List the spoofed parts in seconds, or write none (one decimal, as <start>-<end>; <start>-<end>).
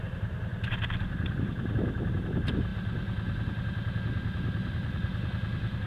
0.0-0.5; 1.5-2.7